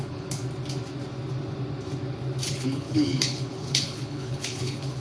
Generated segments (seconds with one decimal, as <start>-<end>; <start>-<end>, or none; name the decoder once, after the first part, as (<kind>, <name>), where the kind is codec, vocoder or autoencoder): 0.0-0.4 (codec, HILCodec); 2.5-5.0